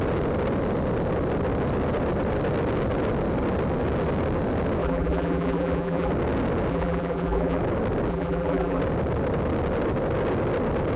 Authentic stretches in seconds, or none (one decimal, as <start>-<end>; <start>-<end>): 0.0-4.8; 6.1-6.7; 7.6-8.1; 8.8-11.0